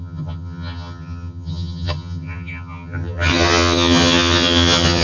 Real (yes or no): no